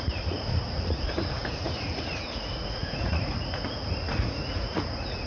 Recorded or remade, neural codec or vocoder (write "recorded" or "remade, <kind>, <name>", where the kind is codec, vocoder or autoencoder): remade, vocoder, Vocos